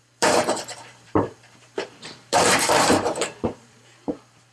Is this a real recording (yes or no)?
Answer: no